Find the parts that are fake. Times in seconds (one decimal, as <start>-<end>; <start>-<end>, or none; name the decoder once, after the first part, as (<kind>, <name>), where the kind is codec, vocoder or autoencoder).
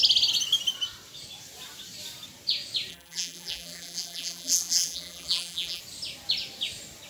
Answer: 2.9-5.8 (vocoder, BigVGAN v2)